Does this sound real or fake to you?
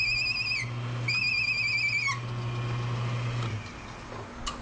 real